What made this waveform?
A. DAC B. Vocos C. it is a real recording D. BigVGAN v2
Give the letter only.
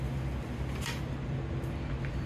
C